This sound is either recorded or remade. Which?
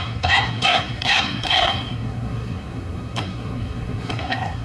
remade